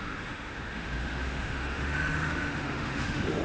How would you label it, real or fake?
fake